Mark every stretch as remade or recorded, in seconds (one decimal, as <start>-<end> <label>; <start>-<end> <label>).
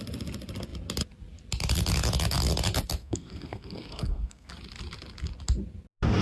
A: 0.0-3.0 recorded; 3.0-4.5 remade; 4.5-6.2 recorded